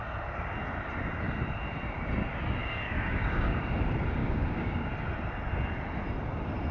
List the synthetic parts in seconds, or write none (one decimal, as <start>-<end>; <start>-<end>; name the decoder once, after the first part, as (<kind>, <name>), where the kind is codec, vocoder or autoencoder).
2.6-3.6 (codec, DAC); 4.2-4.9